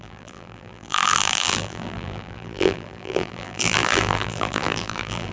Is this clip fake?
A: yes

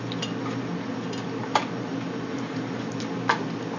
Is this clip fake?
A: no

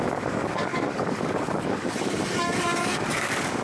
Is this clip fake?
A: yes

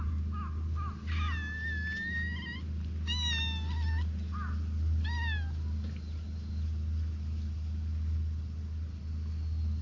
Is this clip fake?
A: no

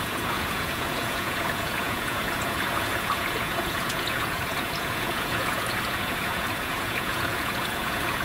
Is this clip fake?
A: yes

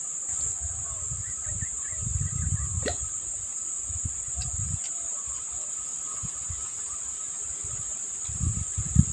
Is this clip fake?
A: no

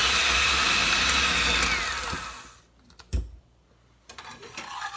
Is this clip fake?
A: no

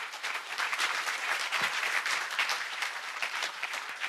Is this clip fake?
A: yes